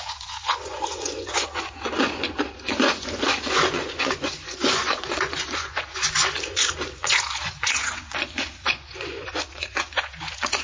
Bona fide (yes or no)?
no